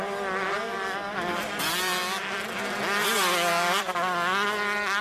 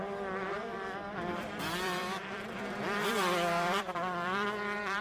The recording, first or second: first